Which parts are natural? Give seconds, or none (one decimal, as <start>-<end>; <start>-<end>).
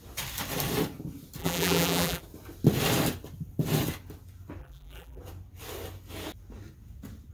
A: 0.0-1.4; 2.2-4.6; 5.2-7.3